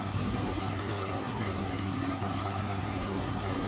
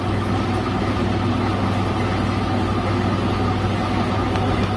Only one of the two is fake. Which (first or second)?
first